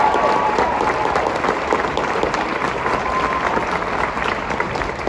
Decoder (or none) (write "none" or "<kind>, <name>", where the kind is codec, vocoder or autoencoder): none